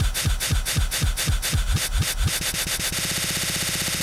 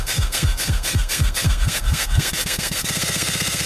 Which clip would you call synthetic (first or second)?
second